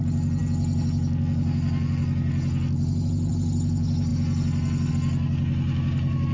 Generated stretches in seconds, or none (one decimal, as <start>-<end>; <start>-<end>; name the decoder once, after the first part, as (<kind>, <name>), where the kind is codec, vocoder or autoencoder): none